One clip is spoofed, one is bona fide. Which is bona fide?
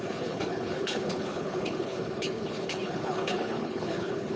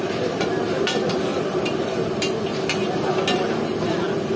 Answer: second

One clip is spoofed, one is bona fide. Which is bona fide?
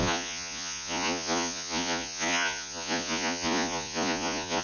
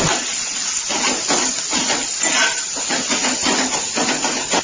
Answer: second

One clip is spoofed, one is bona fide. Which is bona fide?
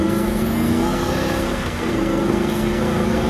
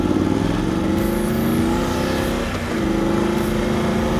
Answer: second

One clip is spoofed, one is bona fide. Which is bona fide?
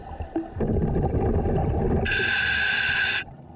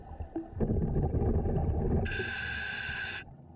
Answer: second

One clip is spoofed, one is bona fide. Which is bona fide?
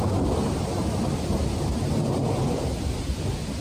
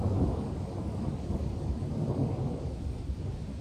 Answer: first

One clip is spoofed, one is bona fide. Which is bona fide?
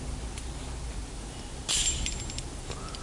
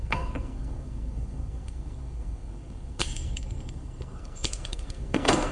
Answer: first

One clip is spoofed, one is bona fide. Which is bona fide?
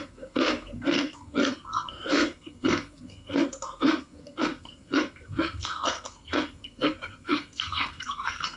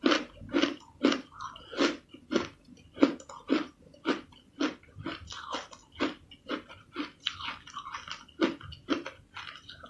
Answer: second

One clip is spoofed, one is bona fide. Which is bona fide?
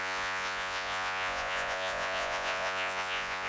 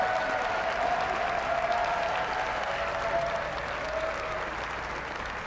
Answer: second